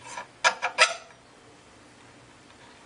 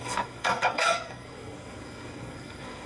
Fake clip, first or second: second